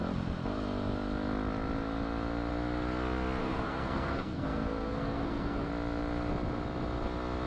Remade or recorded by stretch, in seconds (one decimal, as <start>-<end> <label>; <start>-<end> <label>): 0.0-3.4 recorded; 3.4-5.7 remade; 5.7-7.5 recorded